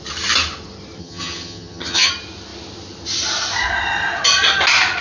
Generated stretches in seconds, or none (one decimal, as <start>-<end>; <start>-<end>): 1.0-2.1